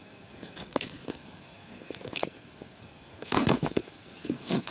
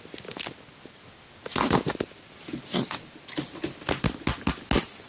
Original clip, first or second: second